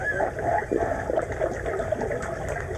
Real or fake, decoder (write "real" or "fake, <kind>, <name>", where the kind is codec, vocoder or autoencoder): real